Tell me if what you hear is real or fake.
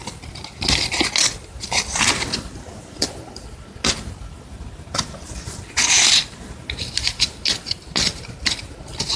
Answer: real